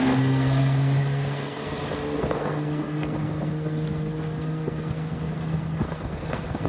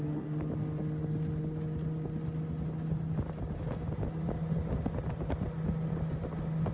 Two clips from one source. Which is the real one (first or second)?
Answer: second